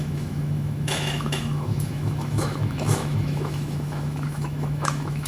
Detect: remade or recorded remade